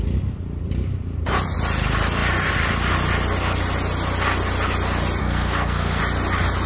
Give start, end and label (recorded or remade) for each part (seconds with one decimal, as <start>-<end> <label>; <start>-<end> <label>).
0.0-5.2 recorded; 5.2-6.0 remade; 6.0-6.7 recorded